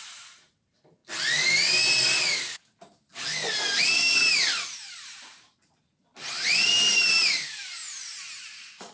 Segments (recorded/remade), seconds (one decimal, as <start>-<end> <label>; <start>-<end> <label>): 0.0-1.0 remade; 1.0-3.8 recorded; 3.8-6.1 remade; 6.1-6.8 recorded; 6.8-8.9 remade